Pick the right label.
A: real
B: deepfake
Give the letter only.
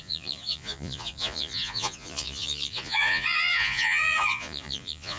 B